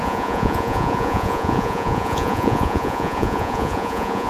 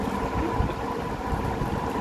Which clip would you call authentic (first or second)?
second